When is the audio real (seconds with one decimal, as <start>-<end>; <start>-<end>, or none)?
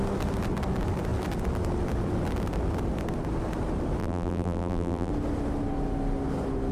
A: 0.0-4.0; 5.1-6.7